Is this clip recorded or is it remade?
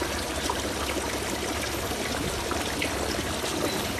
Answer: remade